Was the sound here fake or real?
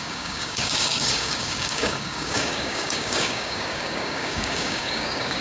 fake